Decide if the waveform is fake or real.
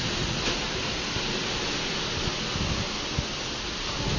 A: real